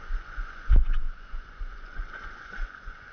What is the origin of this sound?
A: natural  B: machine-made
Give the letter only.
B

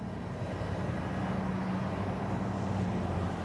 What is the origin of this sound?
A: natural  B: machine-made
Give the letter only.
A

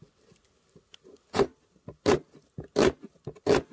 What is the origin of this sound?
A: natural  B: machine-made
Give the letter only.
A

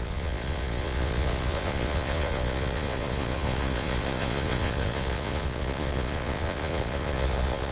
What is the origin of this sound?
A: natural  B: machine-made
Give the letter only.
B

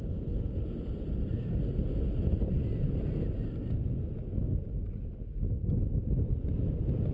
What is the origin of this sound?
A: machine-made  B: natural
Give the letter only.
B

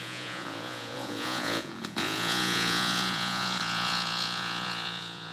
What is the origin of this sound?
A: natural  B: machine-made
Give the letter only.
B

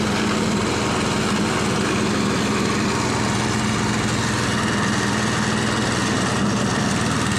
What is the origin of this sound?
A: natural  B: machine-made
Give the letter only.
A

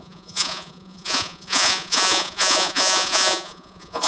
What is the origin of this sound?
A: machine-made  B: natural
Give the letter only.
A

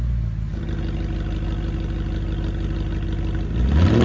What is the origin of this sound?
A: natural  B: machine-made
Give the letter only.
A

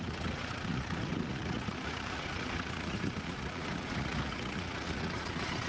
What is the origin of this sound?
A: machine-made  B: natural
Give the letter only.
A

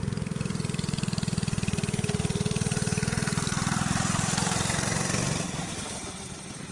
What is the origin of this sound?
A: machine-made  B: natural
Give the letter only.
B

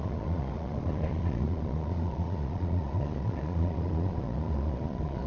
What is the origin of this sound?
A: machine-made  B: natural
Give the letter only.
A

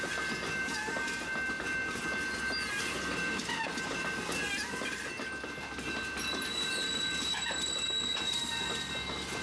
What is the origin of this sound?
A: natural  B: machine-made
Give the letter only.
A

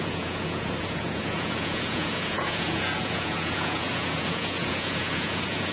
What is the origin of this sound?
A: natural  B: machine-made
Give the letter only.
B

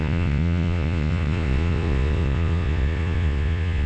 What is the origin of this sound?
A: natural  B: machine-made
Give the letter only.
B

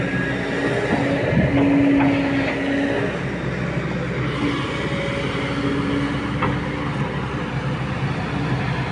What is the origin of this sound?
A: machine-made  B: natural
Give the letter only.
B